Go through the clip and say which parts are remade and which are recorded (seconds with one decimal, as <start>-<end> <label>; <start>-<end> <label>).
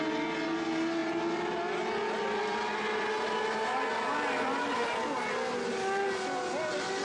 0.0-7.0 recorded